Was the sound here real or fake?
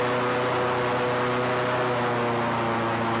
real